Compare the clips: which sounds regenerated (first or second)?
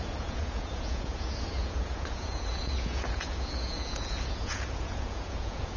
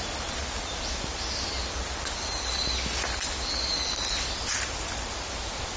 first